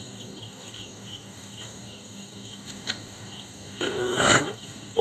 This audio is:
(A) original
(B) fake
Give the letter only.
B